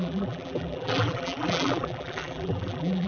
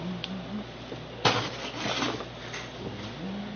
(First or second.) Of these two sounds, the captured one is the second